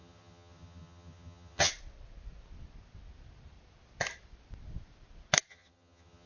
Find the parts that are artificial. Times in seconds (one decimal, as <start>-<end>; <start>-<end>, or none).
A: 0.0-1.7; 5.5-6.3